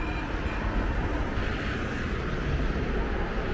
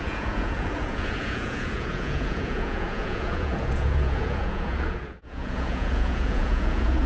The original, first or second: first